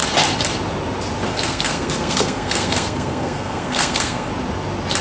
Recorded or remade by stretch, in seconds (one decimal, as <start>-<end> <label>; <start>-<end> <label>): 0.0-1.3 recorded; 1.3-4.3 remade; 4.3-5.0 recorded